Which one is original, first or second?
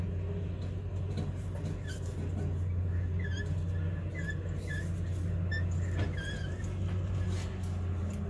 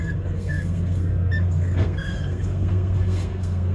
first